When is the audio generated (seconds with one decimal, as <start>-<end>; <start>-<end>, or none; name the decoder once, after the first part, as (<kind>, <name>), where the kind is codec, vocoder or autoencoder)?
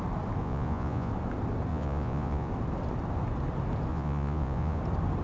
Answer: 0.4-1.1 (vocoder, Vocos); 1.7-2.5; 3.9-4.8